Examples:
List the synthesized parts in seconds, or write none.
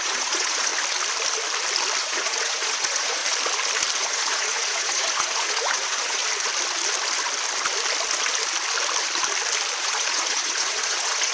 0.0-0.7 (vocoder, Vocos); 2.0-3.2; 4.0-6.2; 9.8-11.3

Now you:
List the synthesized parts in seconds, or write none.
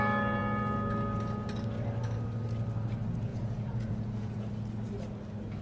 3.3-4.5 (vocoder, Vocos)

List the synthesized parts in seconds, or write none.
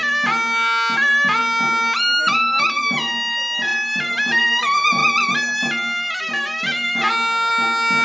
none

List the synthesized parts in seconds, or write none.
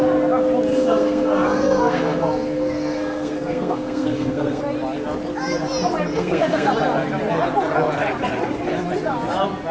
0.7-4.6 (codec, SNAC); 6.1-6.7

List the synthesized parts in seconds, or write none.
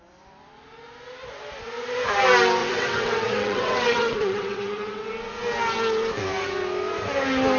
2.6-5.1 (vocoder, WaveNeXt)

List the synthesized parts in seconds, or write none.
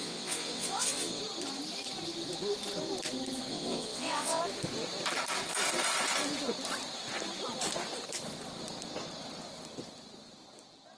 0.0-1.2 (vocoder, WaveNeXt); 3.5-4.4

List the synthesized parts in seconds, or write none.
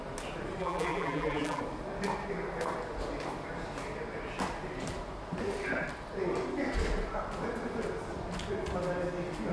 0.6-1.6 (vocoder, BigVGAN v2)